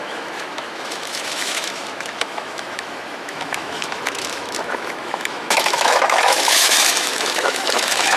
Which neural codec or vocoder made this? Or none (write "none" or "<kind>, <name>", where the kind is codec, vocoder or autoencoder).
autoencoder, DAC-VAE